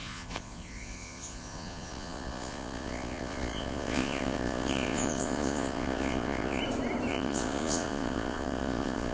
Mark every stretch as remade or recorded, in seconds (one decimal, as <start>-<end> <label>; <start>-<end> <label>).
0.0-6.6 remade; 6.6-7.1 recorded; 7.1-9.1 remade